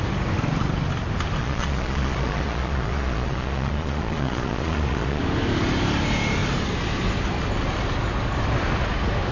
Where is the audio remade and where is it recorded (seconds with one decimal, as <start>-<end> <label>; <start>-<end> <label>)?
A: 0.0-1.4 recorded; 1.4-5.2 remade; 5.2-9.3 recorded